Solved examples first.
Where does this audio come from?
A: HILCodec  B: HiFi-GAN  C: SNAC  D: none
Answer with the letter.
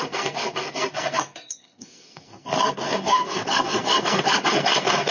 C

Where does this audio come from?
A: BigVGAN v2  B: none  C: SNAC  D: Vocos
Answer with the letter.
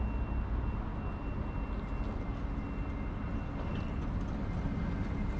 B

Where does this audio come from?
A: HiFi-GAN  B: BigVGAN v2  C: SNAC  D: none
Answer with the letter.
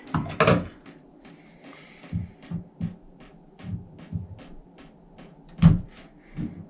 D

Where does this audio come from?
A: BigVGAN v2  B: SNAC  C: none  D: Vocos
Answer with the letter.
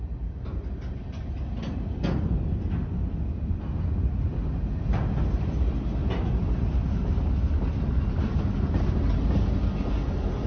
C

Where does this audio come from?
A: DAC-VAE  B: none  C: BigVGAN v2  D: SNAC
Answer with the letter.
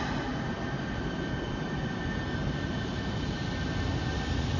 B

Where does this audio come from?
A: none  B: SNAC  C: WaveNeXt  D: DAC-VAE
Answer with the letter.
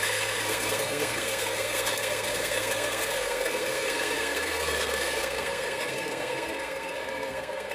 B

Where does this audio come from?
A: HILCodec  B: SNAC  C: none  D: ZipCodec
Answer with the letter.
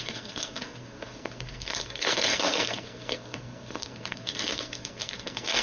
B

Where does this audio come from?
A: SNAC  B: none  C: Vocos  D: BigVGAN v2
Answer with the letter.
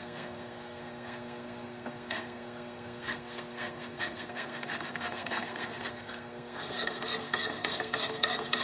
A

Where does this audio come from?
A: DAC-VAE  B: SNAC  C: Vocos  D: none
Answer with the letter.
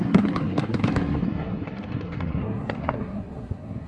B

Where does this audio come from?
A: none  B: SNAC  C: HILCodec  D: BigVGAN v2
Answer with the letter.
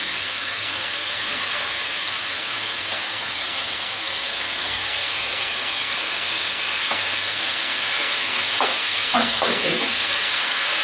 B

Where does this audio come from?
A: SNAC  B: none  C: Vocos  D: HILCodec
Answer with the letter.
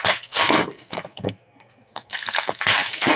A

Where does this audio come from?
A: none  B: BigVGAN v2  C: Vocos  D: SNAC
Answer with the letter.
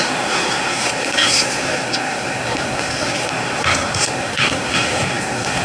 D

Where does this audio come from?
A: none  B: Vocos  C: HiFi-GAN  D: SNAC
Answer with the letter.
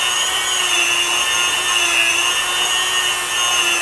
A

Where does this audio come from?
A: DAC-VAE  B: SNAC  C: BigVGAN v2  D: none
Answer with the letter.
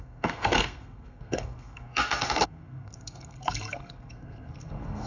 B